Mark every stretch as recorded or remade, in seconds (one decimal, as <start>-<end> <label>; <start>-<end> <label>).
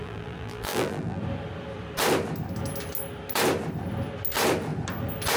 0.0-1.2 remade; 1.2-5.4 recorded